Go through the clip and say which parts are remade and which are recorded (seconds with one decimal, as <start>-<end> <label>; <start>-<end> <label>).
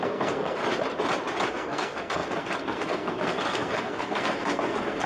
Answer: 0.0-0.6 remade; 0.6-1.5 recorded; 1.5-5.1 remade